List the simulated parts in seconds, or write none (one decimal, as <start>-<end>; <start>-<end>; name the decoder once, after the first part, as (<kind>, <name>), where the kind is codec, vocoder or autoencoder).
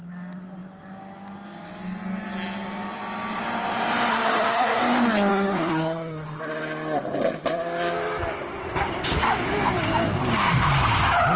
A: 4.1-4.8 (codec, SNAC); 5.3-6.4